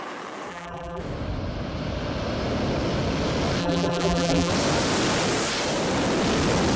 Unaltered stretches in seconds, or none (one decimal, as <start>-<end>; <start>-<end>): 0.0-0.5; 1.0-3.6; 4.5-6.8